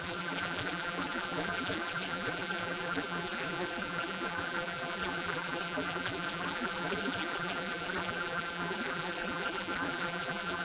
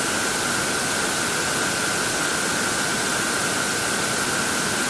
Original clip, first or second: second